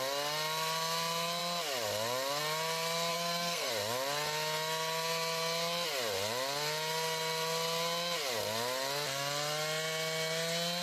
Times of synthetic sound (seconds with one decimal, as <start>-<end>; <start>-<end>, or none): 3.1-3.7